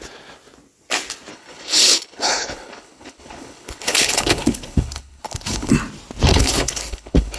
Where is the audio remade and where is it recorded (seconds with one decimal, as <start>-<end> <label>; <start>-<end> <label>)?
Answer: 0.0-1.3 recorded; 1.3-5.7 remade; 5.7-6.3 recorded; 6.3-7.4 remade